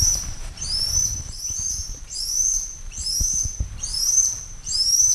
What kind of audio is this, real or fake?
fake